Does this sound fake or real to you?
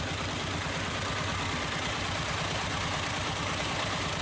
fake